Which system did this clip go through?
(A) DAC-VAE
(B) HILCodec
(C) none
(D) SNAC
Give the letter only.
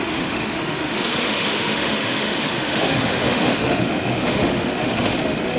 A